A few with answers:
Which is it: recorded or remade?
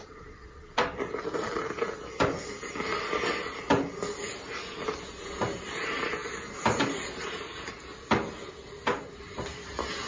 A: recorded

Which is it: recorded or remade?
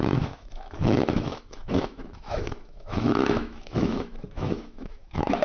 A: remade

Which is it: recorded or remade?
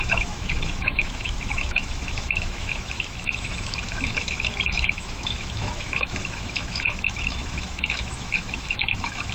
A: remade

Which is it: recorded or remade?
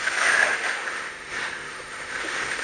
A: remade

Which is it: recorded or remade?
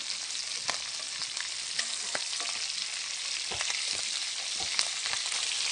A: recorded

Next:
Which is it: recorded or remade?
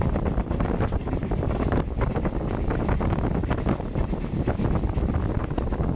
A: recorded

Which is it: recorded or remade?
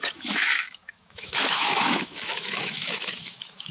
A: remade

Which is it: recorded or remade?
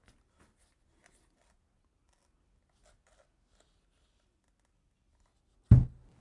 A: recorded